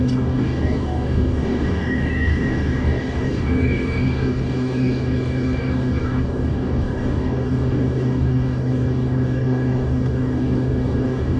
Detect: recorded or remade remade